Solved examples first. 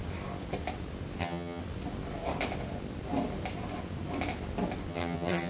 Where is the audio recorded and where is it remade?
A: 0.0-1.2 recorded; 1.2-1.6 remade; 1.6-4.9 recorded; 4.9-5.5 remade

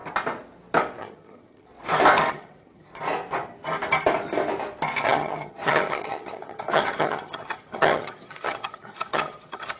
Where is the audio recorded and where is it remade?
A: 0.0-1.0 recorded; 1.0-1.7 remade; 1.7-2.3 recorded; 2.3-2.9 remade; 2.9-5.0 recorded; 5.0-9.8 remade

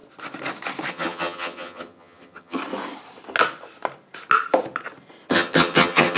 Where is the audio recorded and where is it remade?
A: 0.0-0.9 recorded; 0.9-2.6 remade; 2.6-5.3 recorded; 5.3-6.2 remade

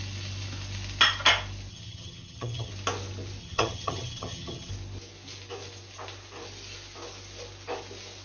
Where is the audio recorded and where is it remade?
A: 0.0-1.7 recorded; 1.7-2.7 remade; 2.7-3.4 recorded; 3.4-4.7 remade; 4.7-8.2 recorded

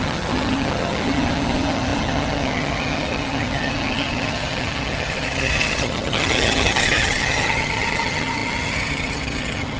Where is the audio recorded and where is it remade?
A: 0.0-9.8 remade

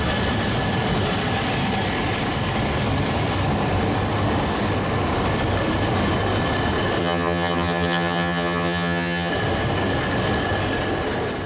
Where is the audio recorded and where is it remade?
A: 0.0-7.0 recorded; 7.0-9.3 remade; 9.3-11.5 recorded

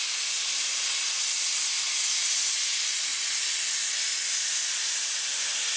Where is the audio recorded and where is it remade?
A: 0.0-5.8 recorded